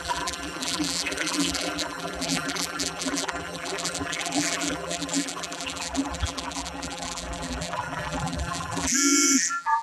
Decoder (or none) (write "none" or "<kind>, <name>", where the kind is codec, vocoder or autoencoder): vocoder, BigVGAN v2